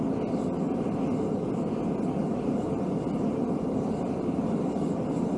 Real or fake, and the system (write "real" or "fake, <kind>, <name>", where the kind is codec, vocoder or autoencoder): real